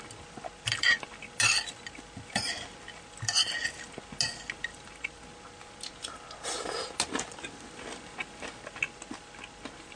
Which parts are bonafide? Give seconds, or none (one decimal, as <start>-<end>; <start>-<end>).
0.0-4.7; 5.2-10.0